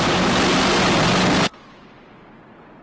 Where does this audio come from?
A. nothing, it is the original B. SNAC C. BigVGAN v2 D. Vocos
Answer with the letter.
A